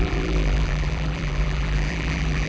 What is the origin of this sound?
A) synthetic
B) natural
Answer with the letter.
A